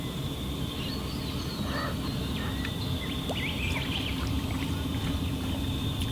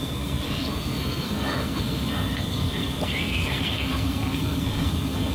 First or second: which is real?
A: first